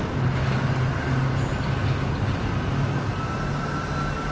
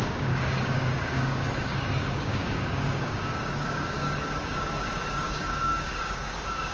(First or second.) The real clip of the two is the first